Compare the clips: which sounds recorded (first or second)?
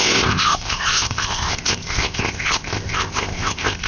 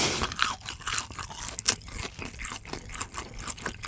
second